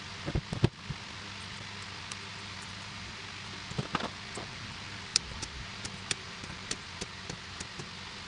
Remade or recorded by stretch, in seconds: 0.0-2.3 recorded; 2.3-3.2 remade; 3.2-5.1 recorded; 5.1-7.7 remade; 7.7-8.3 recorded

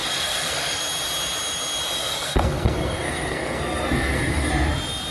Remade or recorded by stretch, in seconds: 0.0-0.8 remade; 0.8-2.0 recorded; 2.0-4.5 remade; 4.5-5.1 recorded

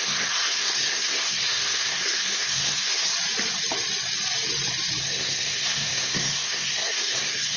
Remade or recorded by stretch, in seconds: 0.0-3.1 remade; 3.1-5.0 recorded; 5.0-7.6 remade

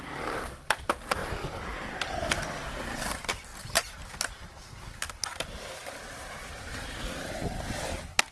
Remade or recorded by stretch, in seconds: 0.0-1.2 recorded; 1.2-2.0 remade; 2.0-8.3 recorded